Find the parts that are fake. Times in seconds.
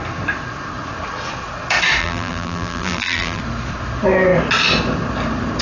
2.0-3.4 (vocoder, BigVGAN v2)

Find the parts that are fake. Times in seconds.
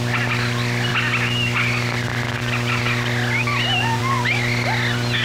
none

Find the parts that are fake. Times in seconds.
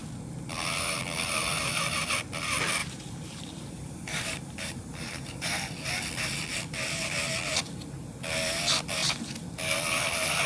2.8-5.9 (vocoder, BigVGAN v2)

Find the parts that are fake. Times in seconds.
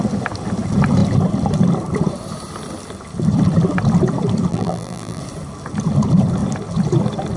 4.5-5.2 (vocoder, BigVGAN v2)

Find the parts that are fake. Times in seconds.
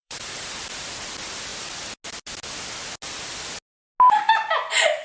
0.0-0.9 (vocoder, BigVGAN v2)